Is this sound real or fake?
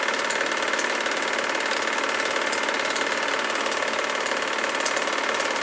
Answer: real